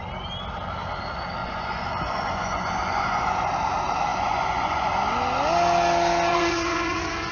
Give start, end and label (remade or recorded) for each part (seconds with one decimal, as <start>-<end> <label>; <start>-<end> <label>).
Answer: 0.0-1.4 recorded; 1.4-3.5 remade; 3.5-4.1 recorded; 4.1-4.9 remade; 4.9-6.3 recorded; 6.3-7.3 remade